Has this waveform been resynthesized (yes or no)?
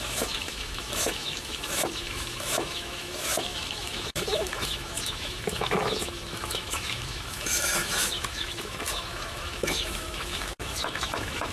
yes